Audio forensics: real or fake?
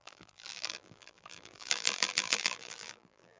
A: fake